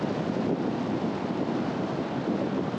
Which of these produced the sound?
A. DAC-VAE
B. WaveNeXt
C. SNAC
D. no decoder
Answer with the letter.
D